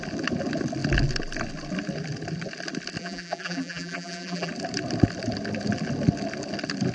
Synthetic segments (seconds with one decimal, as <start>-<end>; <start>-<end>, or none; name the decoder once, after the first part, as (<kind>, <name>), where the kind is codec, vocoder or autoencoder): 3.0-4.5 (vocoder, BigVGAN v2)